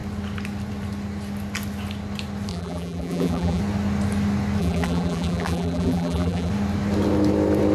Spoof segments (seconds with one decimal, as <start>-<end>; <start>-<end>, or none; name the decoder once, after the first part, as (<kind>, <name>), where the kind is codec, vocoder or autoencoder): 2.5-3.6 (vocoder, BigVGAN v2); 4.6-6.5